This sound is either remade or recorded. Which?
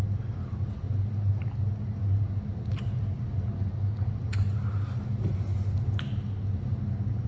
recorded